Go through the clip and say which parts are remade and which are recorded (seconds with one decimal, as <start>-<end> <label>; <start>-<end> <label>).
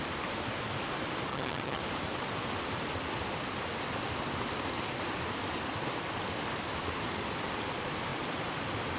0.0-1.3 recorded; 1.3-1.8 remade; 1.8-9.0 recorded